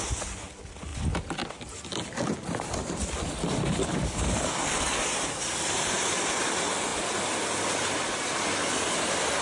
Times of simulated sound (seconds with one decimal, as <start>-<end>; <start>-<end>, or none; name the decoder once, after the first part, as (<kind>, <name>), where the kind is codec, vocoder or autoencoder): 3.8-5.0 (codec, DAC)